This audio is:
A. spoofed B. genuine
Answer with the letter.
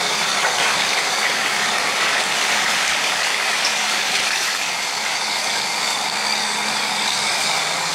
A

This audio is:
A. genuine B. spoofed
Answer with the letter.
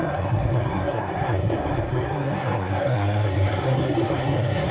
B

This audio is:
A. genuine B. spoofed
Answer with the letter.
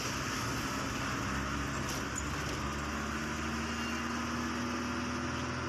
A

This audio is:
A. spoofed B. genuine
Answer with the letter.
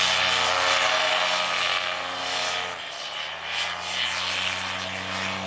B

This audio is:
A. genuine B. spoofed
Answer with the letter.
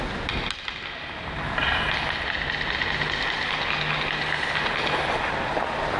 A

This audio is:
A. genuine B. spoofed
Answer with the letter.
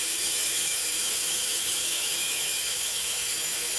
B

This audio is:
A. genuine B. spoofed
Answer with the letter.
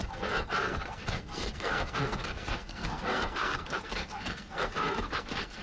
B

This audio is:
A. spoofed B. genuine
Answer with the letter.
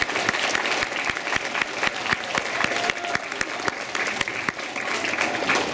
B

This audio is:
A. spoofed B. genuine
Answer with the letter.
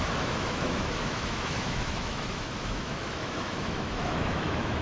A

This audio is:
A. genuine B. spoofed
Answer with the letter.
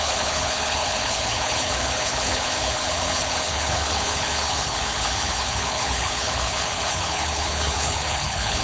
B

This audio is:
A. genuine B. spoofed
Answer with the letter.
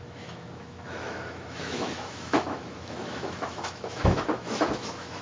B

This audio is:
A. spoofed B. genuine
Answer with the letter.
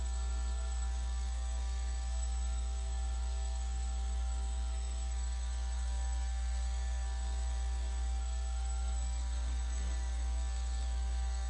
A